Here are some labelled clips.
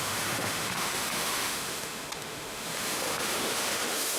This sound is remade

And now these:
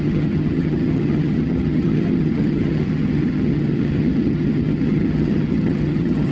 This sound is remade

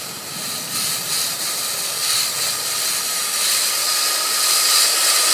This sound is recorded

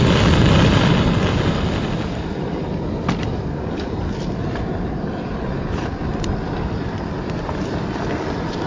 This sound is recorded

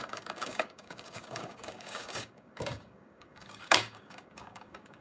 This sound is remade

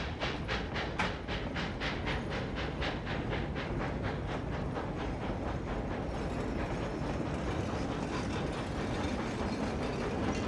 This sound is recorded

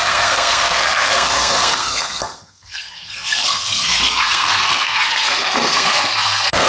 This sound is remade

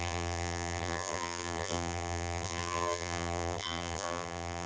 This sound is remade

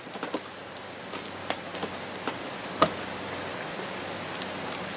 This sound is recorded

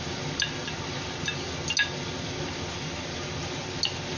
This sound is recorded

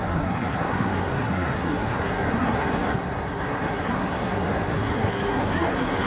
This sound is remade